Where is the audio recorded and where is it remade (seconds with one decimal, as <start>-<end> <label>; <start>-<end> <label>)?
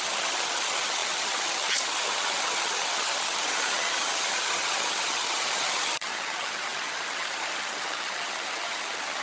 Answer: 0.0-9.2 remade